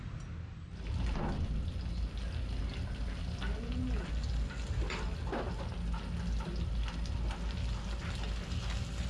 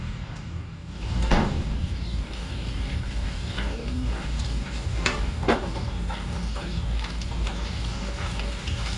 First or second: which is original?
first